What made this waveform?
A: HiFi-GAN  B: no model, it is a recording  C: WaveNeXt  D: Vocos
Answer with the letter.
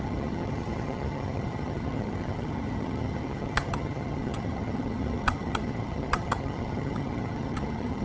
A